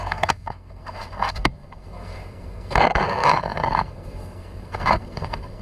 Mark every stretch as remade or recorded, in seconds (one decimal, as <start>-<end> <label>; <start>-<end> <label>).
0.0-5.6 remade